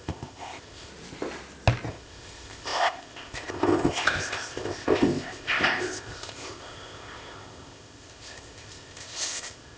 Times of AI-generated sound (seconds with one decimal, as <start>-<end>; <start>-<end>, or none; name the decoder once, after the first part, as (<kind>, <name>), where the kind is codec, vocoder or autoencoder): 0.0-0.9 (codec, ZipCodec); 1.9-9.8